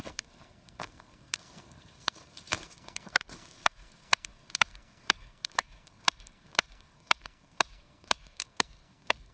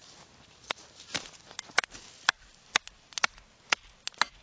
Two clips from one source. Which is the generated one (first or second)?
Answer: first